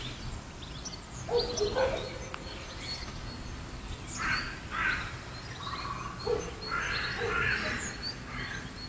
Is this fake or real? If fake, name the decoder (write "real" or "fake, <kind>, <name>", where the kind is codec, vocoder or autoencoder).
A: real